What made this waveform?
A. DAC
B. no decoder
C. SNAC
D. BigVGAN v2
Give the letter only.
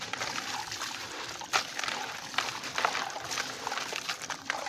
B